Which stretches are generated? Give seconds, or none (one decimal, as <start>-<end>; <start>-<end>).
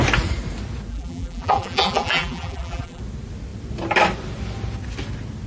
0.9-3.0